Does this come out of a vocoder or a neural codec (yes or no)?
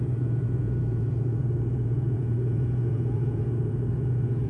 yes